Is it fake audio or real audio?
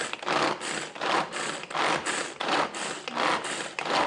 real